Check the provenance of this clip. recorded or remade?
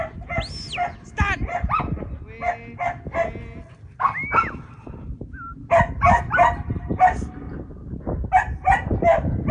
recorded